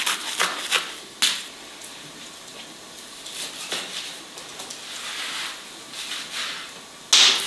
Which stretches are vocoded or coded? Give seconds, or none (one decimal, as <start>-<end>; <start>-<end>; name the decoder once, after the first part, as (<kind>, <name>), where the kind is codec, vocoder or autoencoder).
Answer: none